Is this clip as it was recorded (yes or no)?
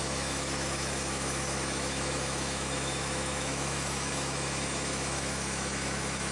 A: no